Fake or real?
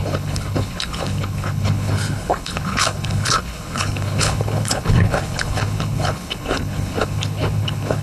fake